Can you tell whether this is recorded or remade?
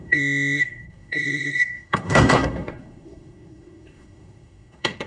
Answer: remade